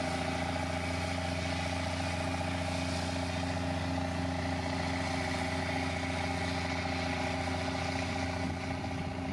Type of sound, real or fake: real